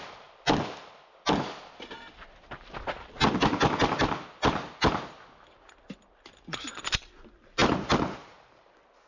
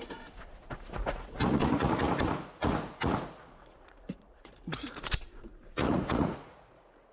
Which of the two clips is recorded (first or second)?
first